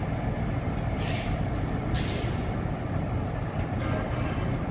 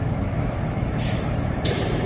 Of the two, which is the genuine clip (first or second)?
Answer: first